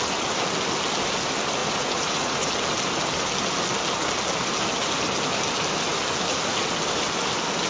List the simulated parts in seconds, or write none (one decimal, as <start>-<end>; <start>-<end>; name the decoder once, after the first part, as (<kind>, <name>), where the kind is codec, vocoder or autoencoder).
1.6-2.5 (vocoder, Vocos)